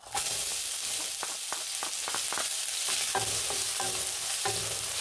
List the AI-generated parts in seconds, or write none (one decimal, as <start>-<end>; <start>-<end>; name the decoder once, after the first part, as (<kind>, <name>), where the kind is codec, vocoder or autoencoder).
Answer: none